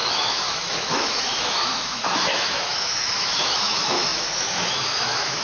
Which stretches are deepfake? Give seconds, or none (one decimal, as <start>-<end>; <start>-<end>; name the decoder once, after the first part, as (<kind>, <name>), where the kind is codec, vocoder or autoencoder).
0.0-5.4 (autoencoder, DAC-VAE)